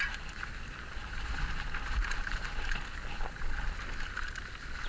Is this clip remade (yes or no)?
no